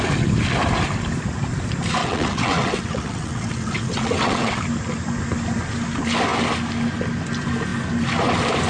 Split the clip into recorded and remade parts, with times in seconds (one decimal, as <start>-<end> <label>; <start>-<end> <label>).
0.0-2.0 recorded; 2.0-4.6 remade; 4.6-8.7 recorded